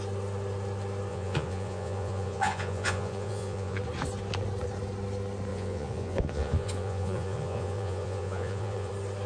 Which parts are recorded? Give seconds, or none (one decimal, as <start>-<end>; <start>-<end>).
0.0-1.1; 3.8-5.5; 8.9-9.3